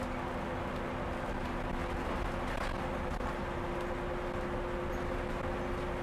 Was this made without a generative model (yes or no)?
yes